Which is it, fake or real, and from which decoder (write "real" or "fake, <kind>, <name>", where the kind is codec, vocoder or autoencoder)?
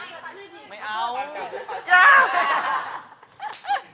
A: real